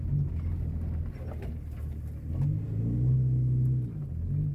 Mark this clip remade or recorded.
recorded